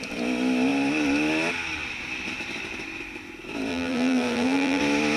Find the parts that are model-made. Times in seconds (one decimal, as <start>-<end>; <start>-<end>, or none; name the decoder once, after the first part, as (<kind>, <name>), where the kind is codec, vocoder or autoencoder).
3.7-4.8 (vocoder, BigVGAN v2)